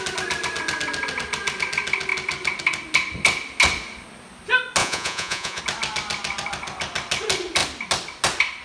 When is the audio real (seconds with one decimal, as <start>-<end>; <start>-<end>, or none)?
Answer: 0.0-4.8; 5.6-8.6